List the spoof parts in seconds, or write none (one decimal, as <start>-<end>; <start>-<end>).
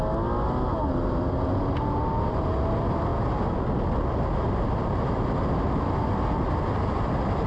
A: none